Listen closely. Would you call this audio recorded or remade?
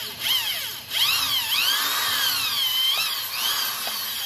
recorded